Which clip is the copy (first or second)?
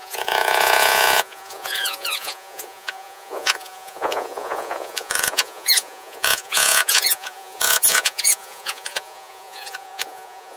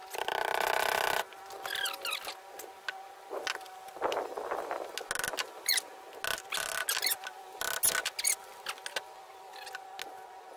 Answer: first